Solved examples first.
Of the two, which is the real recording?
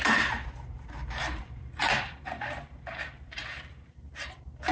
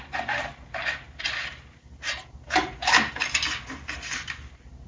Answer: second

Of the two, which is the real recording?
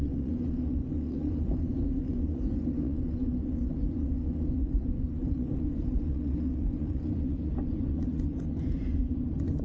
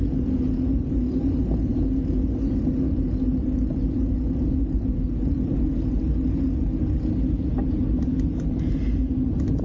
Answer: second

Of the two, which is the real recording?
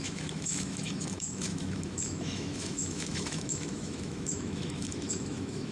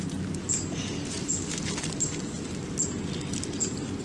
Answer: second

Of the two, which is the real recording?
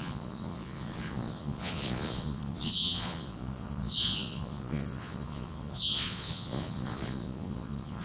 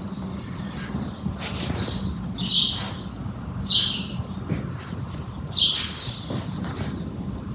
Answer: second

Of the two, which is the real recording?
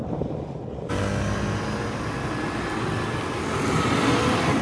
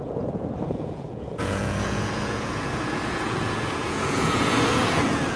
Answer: first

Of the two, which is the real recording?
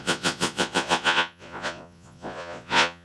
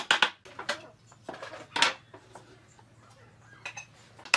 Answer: second